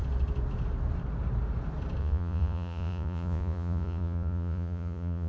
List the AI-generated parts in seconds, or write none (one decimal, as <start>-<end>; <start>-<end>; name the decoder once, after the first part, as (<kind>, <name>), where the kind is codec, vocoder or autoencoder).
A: 2.0-5.3 (vocoder, Vocos)